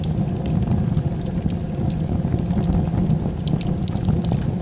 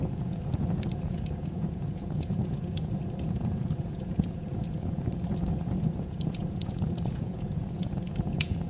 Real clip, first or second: first